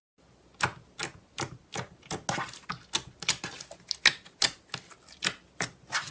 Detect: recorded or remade recorded